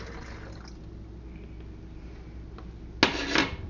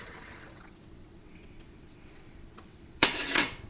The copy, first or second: second